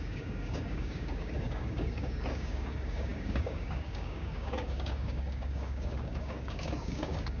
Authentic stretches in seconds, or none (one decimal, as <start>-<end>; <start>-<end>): none